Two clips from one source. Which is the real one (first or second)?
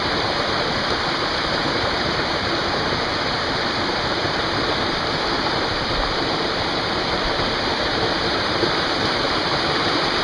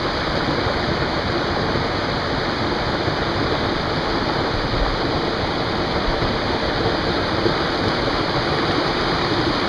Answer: second